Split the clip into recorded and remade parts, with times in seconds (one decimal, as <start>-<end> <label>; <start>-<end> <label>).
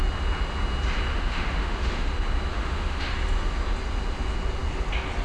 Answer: 0.0-1.1 recorded; 1.1-2.1 remade; 2.1-2.5 recorded; 2.5-3.1 remade; 3.1-5.2 recorded